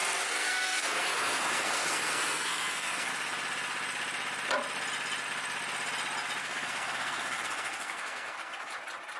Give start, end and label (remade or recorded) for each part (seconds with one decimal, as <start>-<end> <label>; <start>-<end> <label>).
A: 0.0-3.1 remade; 3.1-6.4 recorded; 6.4-8.7 remade; 8.7-9.2 recorded